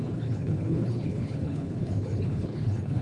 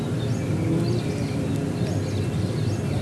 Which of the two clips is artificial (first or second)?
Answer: first